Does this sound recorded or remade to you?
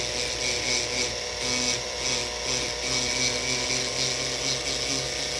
recorded